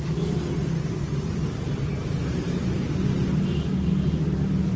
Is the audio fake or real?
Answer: real